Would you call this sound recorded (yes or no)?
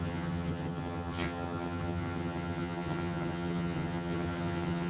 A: no